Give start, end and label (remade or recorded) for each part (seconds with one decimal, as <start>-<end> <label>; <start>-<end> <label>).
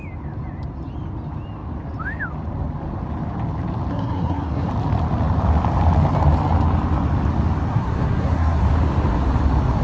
0.0-3.9 recorded; 3.9-4.7 remade; 4.7-7.7 recorded; 7.7-8.6 remade; 8.6-9.8 recorded